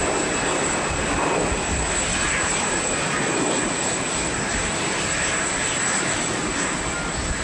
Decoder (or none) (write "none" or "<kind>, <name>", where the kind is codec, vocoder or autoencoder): none